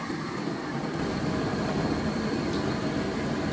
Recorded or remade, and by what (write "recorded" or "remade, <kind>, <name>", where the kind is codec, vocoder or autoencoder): remade, vocoder, BigVGAN v2